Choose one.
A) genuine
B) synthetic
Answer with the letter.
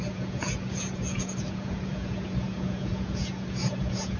B